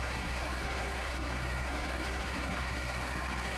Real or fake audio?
fake